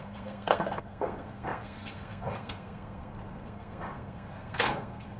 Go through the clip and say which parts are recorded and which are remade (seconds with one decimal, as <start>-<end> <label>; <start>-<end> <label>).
0.0-5.2 remade